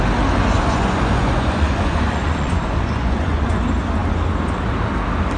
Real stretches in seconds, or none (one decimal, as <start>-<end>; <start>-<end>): 0.0-0.4; 3.6-5.4